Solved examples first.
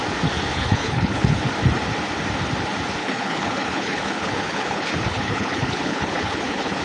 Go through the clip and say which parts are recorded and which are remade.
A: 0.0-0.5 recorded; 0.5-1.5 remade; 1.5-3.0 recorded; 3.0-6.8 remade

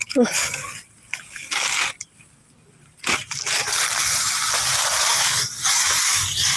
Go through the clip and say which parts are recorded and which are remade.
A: 0.0-0.6 remade; 0.6-1.2 recorded; 1.2-1.8 remade; 1.8-5.1 recorded; 5.1-6.6 remade

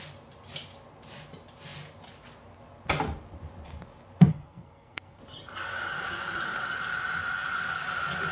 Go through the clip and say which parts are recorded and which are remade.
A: 0.0-4.3 recorded; 4.3-5.2 remade; 5.2-8.3 recorded

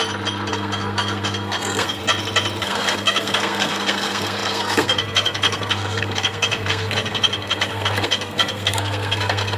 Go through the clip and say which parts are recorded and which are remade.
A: 0.0-0.5 recorded; 0.5-2.0 remade; 2.0-2.6 recorded; 2.6-9.6 remade

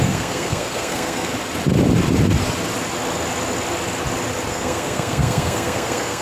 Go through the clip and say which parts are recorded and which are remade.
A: 0.0-1.3 remade; 1.3-4.5 recorded; 4.5-6.2 remade

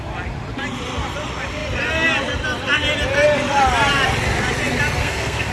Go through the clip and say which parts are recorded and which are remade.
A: 0.0-5.0 recorded; 5.0-5.5 remade

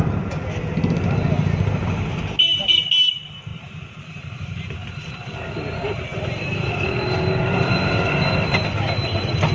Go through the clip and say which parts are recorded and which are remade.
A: 0.0-3.5 recorded; 3.5-5.4 remade; 5.4-6.1 recorded; 6.1-6.7 remade; 6.7-7.7 recorded; 7.7-8.3 remade; 8.3-9.5 recorded